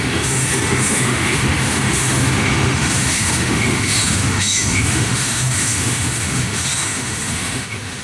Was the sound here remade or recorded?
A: remade